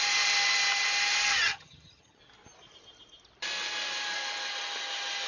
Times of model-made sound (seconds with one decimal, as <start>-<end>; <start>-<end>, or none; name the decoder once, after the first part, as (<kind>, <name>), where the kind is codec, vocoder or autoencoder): 1.3-2.2 (vocoder, HiFi-GAN)